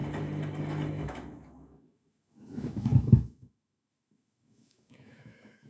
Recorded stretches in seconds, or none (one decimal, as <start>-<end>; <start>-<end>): 0.0-0.9